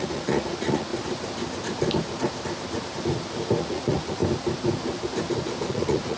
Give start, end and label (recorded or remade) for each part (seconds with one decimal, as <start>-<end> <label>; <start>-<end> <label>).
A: 0.0-0.9 remade; 0.9-3.6 recorded; 3.6-4.2 remade; 4.2-5.7 recorded; 5.7-6.2 remade